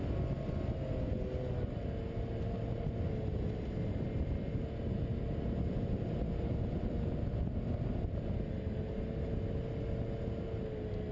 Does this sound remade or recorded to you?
recorded